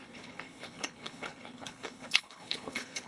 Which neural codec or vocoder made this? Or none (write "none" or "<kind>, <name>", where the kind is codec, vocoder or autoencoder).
codec, HILCodec